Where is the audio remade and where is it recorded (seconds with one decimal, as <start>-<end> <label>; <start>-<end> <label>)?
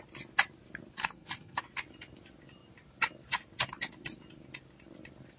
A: 0.0-1.0 recorded; 1.0-1.6 remade; 1.6-5.4 recorded